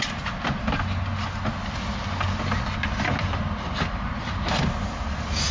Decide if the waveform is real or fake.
real